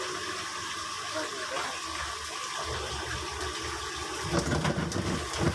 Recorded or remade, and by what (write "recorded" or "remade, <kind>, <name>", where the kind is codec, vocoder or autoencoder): recorded